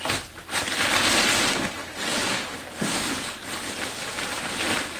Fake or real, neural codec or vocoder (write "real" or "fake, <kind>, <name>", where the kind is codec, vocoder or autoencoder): real